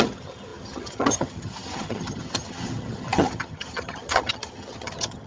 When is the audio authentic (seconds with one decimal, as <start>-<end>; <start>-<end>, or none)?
none